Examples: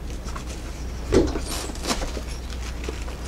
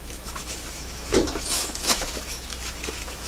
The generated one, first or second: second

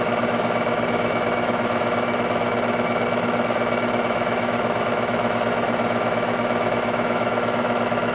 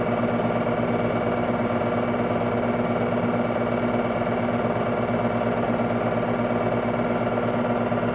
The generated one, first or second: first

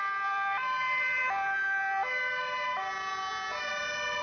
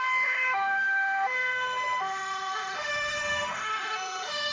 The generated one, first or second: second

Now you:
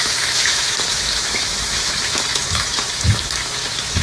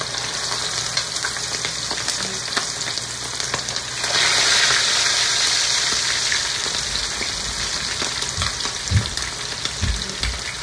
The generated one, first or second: first